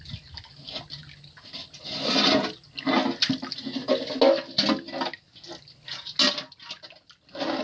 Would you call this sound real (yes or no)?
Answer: yes